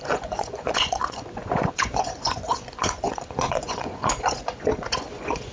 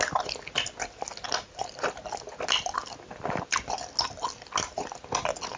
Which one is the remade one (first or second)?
first